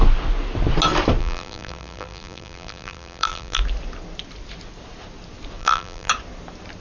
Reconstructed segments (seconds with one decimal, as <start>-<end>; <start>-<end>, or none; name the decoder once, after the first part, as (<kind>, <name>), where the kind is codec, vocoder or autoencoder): 1.2-3.6 (vocoder, BigVGAN v2); 5.6-6.1